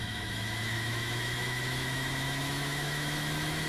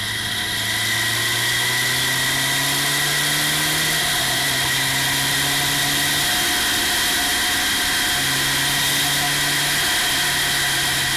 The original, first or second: second